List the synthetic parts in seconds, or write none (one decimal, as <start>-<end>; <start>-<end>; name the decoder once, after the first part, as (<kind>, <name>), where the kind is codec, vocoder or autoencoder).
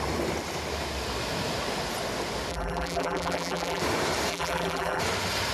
2.5-3.8 (vocoder, BigVGAN v2); 4.3-5.0